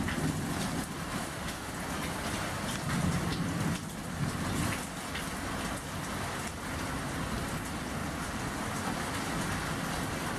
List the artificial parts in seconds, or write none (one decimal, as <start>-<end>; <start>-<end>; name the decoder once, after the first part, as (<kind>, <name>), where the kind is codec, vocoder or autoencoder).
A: 1.2-1.7 (autoencoder, DAC-VAE)